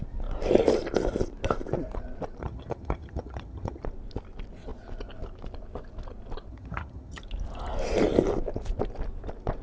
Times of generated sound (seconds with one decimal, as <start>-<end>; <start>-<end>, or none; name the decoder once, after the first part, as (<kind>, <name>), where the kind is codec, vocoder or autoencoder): 2.4-3.8 (vocoder, HiFi-GAN); 6.5-7.2